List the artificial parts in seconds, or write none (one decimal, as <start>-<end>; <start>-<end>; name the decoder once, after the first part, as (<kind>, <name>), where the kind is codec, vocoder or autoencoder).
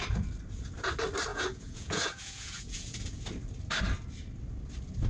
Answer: 1.3-3.2 (vocoder, Vocos)